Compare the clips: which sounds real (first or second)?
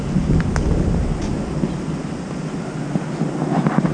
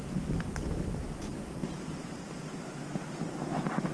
first